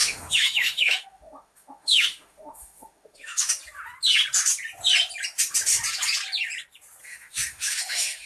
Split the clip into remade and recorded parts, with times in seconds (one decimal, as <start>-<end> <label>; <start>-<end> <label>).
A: 0.0-3.5 remade; 3.5-7.0 recorded; 7.0-8.3 remade